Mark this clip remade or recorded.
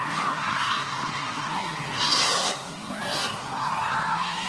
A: remade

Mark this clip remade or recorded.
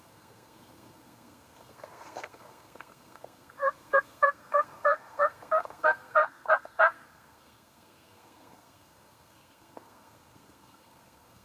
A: remade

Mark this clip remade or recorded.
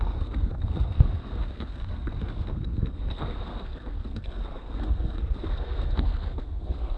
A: remade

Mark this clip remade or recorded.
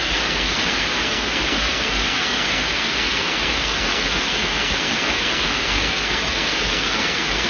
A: remade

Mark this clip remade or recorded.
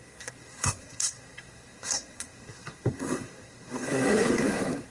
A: remade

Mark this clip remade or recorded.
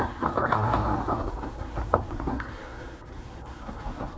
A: remade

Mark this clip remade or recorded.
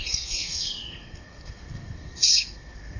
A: remade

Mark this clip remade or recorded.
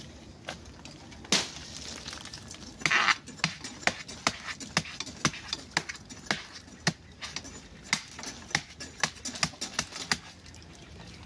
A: recorded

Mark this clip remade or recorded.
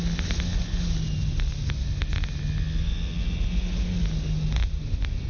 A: recorded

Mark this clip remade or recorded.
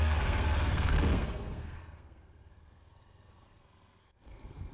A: remade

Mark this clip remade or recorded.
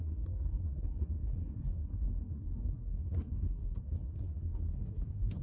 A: remade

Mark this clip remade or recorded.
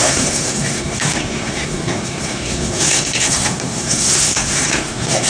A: remade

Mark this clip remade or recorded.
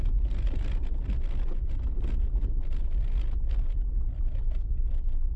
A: recorded